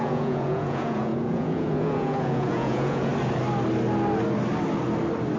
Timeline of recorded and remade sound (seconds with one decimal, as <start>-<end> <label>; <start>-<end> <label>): 0.0-3.1 remade; 3.1-5.4 recorded